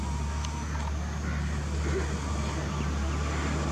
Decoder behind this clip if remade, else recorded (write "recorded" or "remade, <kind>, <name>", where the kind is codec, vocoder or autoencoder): recorded